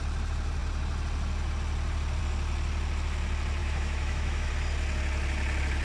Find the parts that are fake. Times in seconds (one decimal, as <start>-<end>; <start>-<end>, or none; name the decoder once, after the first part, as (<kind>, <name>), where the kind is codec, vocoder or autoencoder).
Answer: 3.6-4.5 (autoencoder, DAC-VAE)